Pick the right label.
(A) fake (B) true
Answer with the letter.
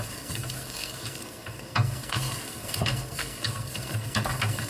A